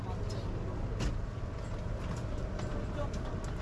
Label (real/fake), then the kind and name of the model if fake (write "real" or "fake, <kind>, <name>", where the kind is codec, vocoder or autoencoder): real